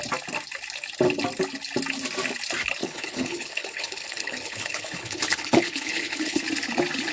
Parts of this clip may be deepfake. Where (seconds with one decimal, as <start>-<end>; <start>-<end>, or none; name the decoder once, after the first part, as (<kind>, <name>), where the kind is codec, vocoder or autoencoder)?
2.8-6.4 (codec, HILCodec)